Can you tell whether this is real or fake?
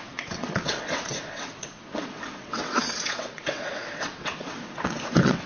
fake